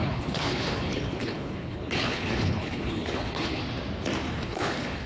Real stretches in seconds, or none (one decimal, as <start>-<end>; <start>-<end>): 3.6-4.3